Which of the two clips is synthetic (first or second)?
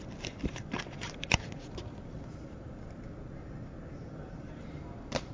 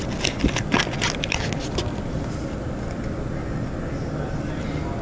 first